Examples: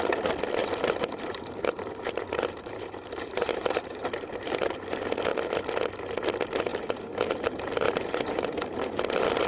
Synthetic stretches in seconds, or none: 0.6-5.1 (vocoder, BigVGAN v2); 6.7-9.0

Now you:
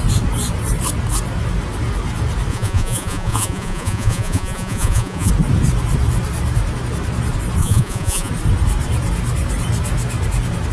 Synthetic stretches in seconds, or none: 2.5-5.3 (vocoder, Vocos); 7.6-8.3

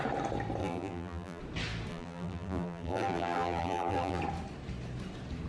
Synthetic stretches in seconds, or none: 0.6-1.4 (vocoder, BigVGAN v2); 1.9-4.2

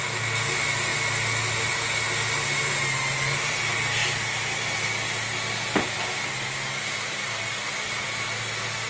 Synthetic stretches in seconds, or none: none